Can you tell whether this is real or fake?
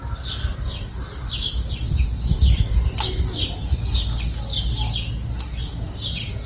real